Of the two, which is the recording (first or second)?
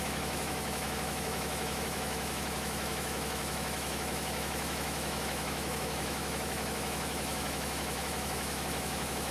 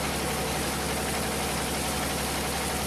second